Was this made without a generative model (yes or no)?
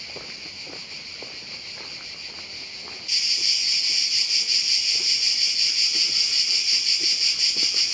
yes